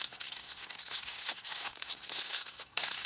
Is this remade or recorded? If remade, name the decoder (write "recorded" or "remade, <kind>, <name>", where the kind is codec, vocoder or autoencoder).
remade, codec, SNAC